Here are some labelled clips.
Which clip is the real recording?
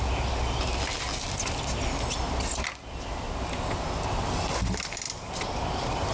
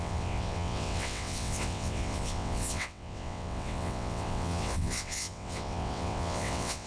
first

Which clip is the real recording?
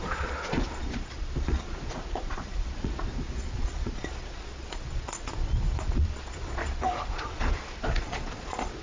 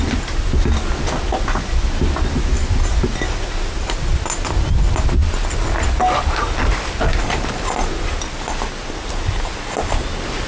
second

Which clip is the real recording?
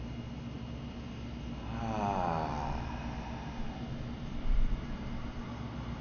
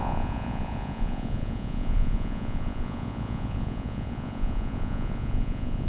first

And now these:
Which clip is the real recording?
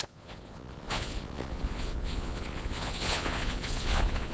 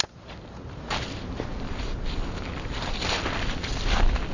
second